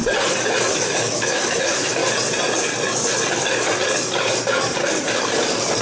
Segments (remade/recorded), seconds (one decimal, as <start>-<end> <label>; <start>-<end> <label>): 0.0-0.7 recorded; 0.7-2.0 remade; 2.0-5.8 recorded